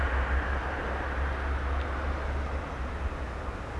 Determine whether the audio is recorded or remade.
recorded